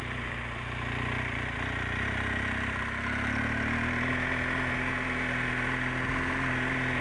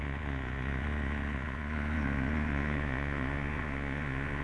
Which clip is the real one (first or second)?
first